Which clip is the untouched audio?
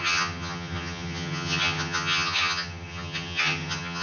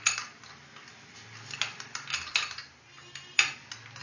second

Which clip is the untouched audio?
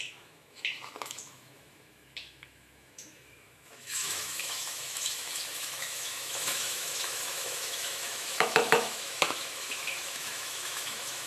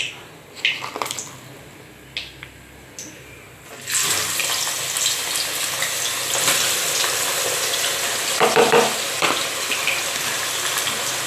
second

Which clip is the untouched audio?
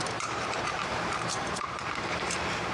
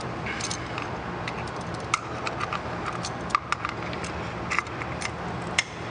second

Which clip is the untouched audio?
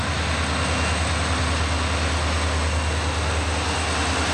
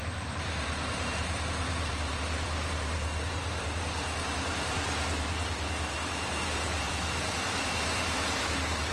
first